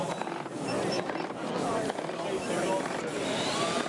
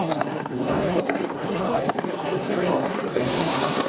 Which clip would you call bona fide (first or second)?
first